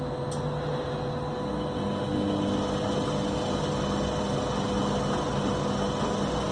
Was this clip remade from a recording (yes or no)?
no